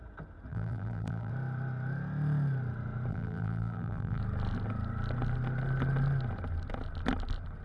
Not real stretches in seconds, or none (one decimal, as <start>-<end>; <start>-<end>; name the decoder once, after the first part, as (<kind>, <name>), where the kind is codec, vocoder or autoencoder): 0.5-1.3 (vocoder, BigVGAN v2); 3.1-4.2